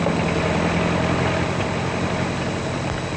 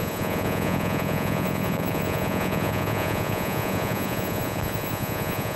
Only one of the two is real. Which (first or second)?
first